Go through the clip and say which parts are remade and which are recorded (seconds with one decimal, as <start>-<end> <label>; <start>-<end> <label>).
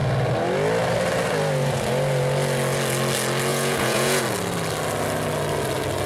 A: 0.0-3.5 recorded; 3.5-4.2 remade; 4.2-6.1 recorded